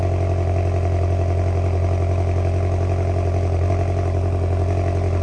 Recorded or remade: recorded